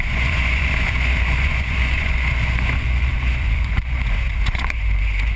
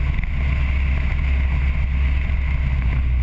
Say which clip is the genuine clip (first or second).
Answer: second